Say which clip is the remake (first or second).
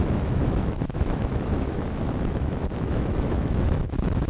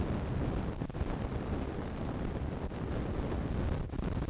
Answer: first